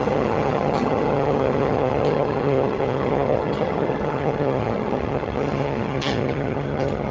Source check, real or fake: fake